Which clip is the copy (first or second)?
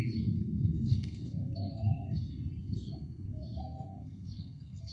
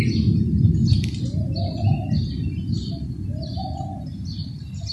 first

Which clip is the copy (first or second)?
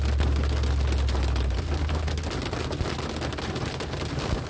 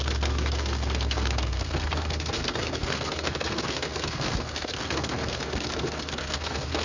second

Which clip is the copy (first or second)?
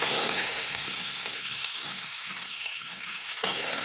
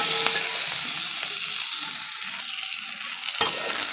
first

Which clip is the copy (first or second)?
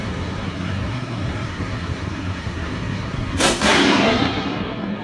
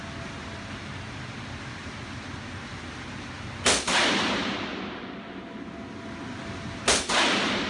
first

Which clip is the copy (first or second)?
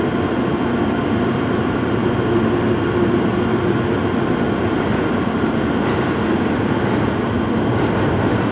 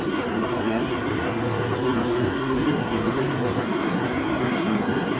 second